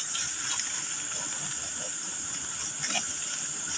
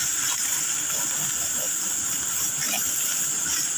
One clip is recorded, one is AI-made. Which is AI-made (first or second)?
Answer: second